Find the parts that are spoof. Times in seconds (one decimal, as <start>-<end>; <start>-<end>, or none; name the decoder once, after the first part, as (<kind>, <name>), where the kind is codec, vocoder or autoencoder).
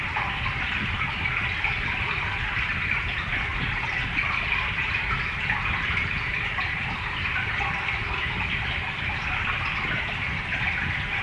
none